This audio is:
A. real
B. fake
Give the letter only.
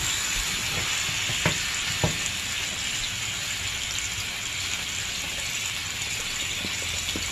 A